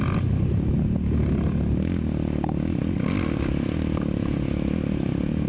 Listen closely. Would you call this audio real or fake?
real